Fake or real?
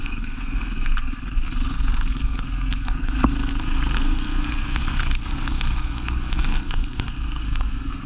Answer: fake